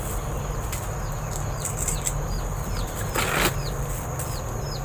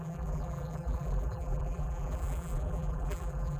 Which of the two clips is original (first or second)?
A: first